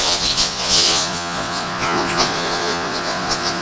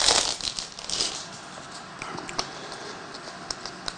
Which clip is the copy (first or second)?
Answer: first